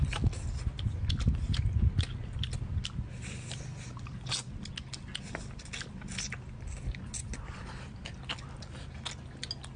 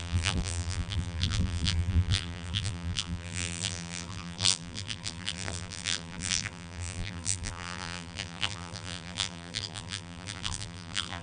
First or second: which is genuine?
first